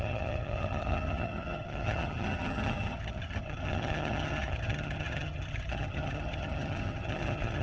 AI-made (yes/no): yes